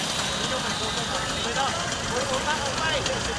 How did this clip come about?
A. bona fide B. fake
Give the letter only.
A